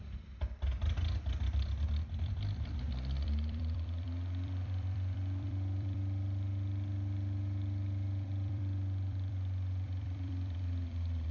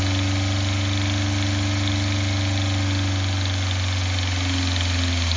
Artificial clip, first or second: first